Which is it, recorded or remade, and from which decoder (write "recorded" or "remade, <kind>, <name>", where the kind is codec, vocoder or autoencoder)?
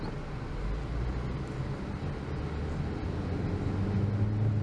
recorded